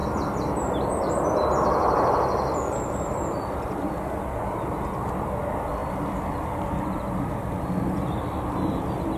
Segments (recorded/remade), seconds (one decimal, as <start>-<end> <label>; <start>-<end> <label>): 0.0-9.2 recorded